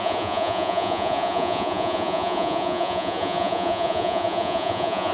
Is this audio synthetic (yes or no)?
yes